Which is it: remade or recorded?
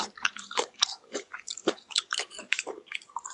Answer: remade